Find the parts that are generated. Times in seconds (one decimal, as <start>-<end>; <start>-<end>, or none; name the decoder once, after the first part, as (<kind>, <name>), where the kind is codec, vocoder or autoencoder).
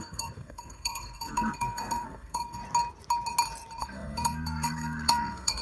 0.0-2.6 (codec, SNAC); 3.8-5.6